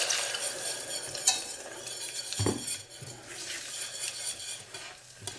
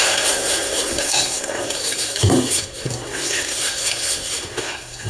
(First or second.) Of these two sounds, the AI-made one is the second